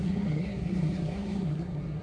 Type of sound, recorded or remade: remade